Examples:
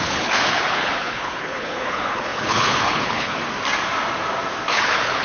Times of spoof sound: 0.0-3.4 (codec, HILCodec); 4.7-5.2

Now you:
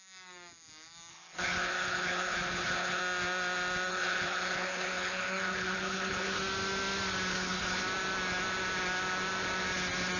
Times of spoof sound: 1.1-3.0 (codec, HILCodec); 3.9-6.4; 7.3-7.8

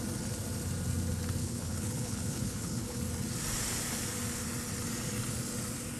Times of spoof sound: 1.4-3.0 (codec, HILCodec)

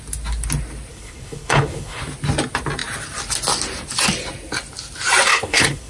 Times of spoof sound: 0.9-2.0 (codec, HILCodec); 5.3-5.9